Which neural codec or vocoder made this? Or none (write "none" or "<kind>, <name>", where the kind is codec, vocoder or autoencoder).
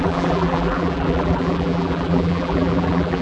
vocoder, BigVGAN v2